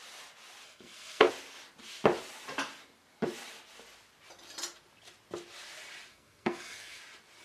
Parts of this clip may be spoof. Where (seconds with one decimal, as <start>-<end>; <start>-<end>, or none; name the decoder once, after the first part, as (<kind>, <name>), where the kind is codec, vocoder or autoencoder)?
0.6-1.3 (codec, SNAC); 6.1-7.0